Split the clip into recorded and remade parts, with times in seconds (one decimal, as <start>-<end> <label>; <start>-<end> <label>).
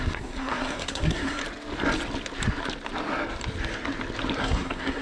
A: 0.0-1.4 remade; 1.4-4.4 recorded; 4.4-5.0 remade